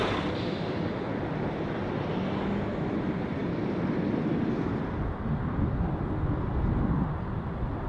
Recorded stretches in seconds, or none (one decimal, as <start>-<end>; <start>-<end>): 0.0-7.9